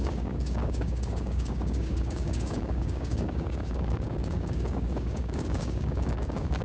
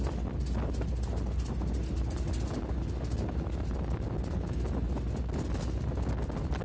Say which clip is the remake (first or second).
first